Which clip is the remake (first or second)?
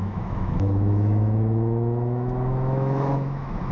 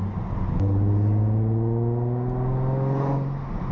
first